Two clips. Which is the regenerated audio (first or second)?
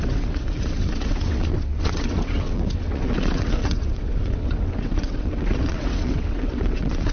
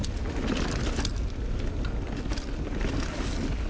first